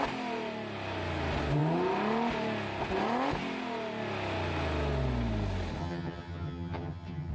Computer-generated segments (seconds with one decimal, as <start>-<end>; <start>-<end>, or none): 5.8-7.3